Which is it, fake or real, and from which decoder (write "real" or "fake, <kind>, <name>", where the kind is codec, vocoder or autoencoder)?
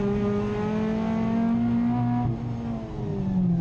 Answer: real